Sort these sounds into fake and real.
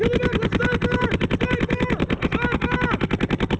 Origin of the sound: real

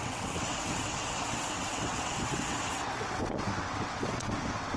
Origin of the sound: fake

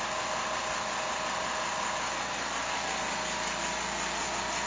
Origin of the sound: real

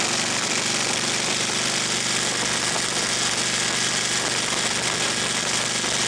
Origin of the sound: real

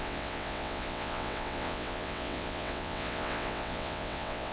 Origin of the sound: fake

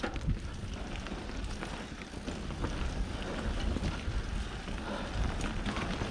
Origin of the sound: real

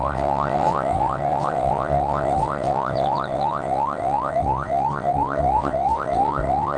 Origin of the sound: fake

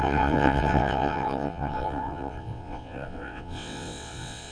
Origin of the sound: fake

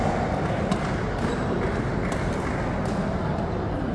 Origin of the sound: real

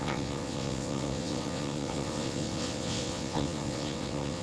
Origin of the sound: fake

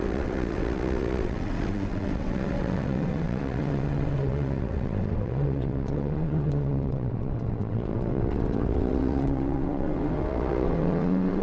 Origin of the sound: fake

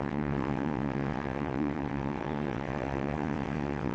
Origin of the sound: fake